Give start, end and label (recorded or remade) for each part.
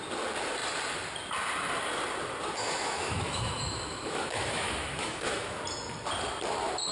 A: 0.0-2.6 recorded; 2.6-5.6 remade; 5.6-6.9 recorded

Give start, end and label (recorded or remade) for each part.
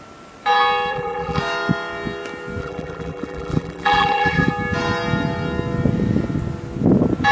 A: 0.0-0.9 recorded; 0.9-1.4 remade; 1.4-2.6 recorded; 2.6-4.5 remade; 4.5-7.3 recorded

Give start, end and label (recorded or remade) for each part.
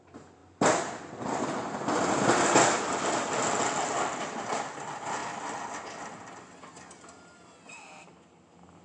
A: 0.0-8.8 recorded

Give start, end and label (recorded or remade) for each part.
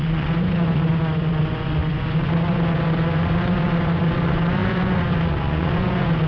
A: 0.0-6.3 remade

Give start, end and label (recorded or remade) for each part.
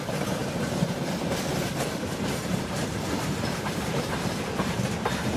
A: 0.0-0.4 remade; 0.4-2.0 recorded; 2.0-5.4 remade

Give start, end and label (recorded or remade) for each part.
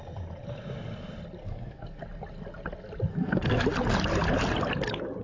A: 0.0-1.4 recorded; 1.4-2.0 remade; 2.0-3.1 recorded; 3.1-3.6 remade; 3.6-5.2 recorded